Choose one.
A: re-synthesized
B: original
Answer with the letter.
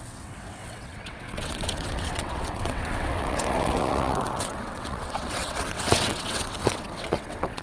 A